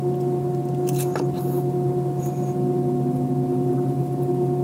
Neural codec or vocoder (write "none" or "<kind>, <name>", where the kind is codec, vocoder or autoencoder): none